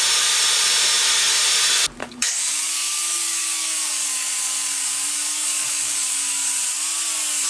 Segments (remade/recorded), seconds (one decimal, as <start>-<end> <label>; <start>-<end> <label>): 0.0-2.0 recorded; 2.0-6.5 remade; 6.5-7.5 recorded